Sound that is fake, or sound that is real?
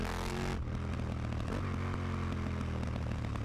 real